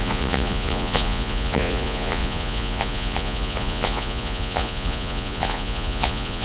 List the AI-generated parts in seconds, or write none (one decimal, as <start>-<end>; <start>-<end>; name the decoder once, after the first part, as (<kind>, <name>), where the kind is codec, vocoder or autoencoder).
0.0-6.4 (vocoder, Vocos)